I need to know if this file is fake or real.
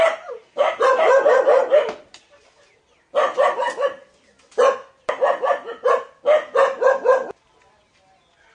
real